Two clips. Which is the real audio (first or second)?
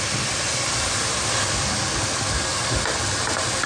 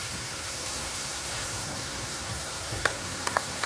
first